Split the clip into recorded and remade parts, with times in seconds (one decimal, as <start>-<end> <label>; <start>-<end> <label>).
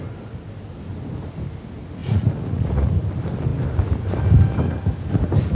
0.0-2.0 recorded; 2.0-2.9 remade; 2.9-5.5 recorded